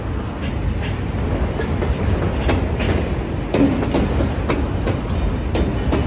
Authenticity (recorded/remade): recorded